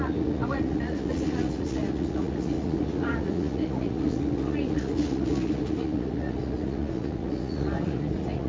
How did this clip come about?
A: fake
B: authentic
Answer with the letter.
A